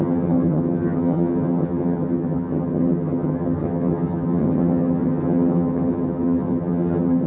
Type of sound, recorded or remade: remade